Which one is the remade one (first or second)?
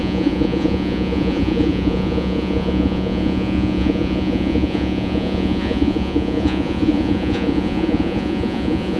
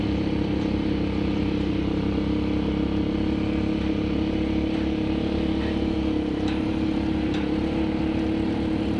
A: first